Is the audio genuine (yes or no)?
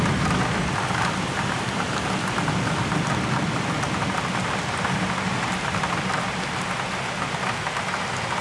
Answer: yes